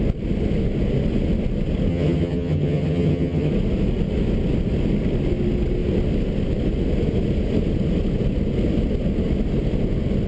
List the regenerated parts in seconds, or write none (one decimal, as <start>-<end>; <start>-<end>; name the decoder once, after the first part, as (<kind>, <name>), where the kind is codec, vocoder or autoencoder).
1.9-3.5 (vocoder, HiFi-GAN)